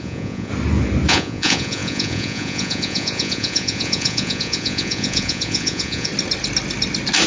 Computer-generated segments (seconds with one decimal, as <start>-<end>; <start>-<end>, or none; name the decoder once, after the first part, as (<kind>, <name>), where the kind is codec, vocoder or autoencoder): 0.0-0.5 (vocoder, Vocos); 1.1-6.1